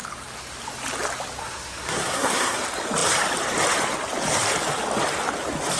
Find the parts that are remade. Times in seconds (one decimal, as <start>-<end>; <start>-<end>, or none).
1.4-2.6